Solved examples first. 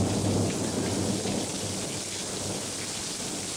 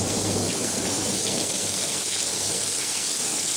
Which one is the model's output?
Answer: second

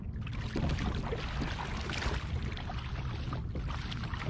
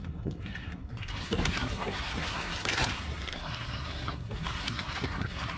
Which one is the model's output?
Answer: second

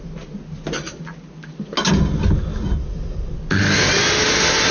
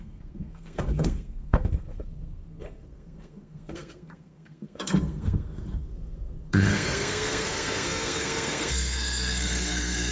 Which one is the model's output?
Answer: second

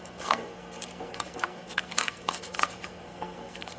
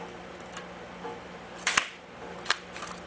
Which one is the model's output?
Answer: first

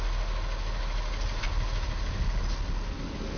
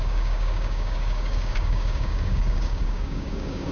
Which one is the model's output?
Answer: second